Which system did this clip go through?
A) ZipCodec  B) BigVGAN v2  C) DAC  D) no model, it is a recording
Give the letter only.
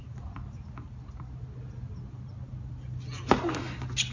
D